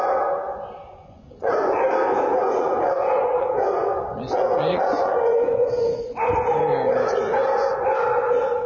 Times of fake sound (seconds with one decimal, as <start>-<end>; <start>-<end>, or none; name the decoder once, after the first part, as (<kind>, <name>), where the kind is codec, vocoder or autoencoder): 0.9-1.8 (vocoder, Vocos); 2.4-6.1